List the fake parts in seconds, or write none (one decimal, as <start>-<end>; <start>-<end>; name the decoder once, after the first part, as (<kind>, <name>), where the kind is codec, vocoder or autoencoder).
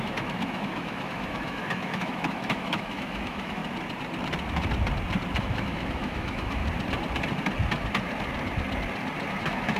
0.0-3.6 (autoencoder, DAC-VAE); 5.4-6.6; 9.4-9.8